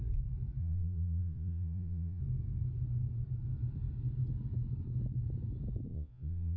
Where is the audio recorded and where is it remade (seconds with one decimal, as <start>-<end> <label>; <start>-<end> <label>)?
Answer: 0.0-0.6 recorded; 0.6-2.2 remade; 2.2-5.9 recorded; 5.9-6.6 remade